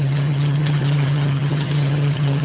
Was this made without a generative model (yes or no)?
no